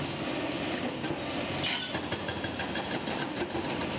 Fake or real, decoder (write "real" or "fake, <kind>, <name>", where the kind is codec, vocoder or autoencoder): real